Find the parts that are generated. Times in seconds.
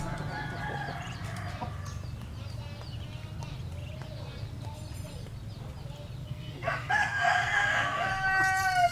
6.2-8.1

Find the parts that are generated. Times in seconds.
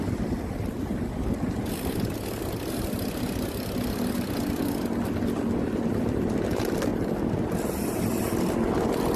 none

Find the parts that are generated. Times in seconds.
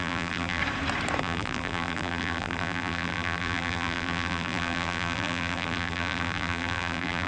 0.0-0.6; 1.2-7.3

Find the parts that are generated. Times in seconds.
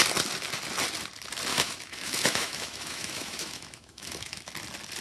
1.5-4.5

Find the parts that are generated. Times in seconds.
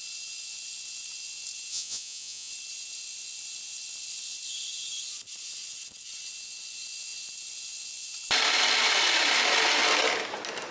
1.7-2.5